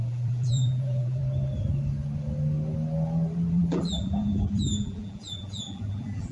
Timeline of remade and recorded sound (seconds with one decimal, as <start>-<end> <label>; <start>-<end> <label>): 0.0-1.2 remade; 1.2-3.5 recorded; 3.5-6.3 remade